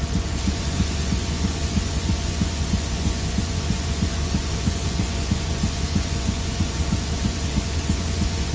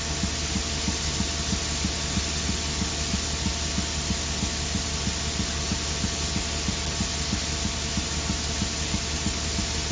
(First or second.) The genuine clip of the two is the second